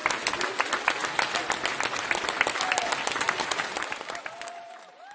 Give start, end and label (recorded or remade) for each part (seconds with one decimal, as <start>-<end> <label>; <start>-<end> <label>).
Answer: 0.0-3.0 recorded; 3.0-5.1 remade